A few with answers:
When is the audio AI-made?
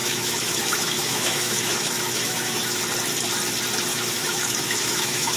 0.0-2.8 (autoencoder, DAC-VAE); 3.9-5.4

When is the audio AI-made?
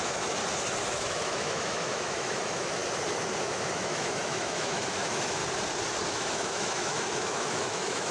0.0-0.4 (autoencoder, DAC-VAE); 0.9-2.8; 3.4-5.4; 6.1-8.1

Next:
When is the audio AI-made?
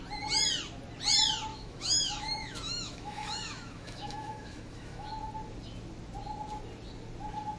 1.5-5.1 (autoencoder, DAC-VAE)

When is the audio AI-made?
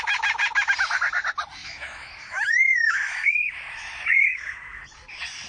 1.6-4.8 (autoencoder, DAC-VAE)